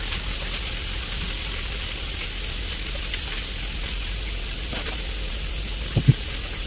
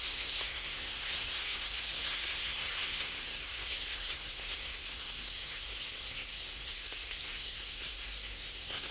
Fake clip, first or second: second